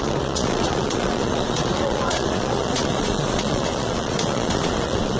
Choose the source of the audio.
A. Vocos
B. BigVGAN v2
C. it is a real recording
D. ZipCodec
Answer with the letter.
A